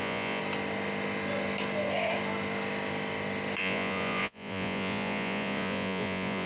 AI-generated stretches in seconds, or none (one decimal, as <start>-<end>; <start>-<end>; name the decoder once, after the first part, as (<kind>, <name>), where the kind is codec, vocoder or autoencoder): 0.0-0.4 (vocoder, Vocos); 3.6-6.5